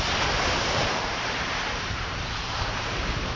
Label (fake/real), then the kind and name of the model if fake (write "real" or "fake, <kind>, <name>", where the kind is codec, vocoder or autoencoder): fake, vocoder, BigVGAN v2